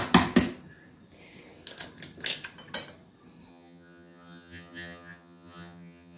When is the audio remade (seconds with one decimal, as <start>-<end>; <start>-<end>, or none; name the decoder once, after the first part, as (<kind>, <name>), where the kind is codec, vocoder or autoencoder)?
3.5-6.2 (vocoder, HiFi-GAN)